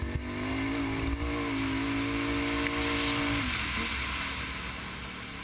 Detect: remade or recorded recorded